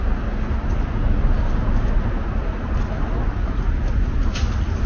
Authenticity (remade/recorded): recorded